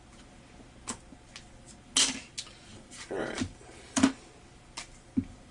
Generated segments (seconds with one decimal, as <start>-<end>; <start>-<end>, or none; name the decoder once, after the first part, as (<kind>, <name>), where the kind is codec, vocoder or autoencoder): 2.7-4.3 (vocoder, BigVGAN v2)